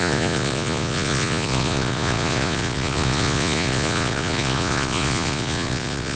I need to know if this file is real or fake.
fake